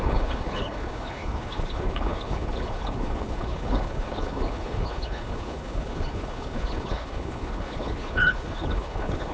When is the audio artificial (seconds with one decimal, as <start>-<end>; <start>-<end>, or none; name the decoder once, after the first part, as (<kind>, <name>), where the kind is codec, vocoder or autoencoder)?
0.0-9.3 (codec, HILCodec)